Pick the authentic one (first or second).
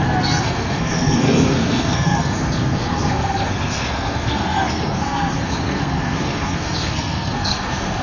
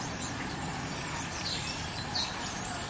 second